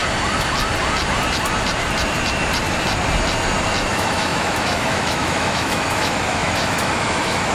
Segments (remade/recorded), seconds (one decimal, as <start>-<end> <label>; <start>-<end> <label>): 0.0-3.9 recorded; 3.9-7.5 remade